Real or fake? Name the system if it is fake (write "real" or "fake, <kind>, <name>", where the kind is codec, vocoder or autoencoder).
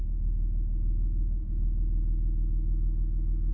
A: real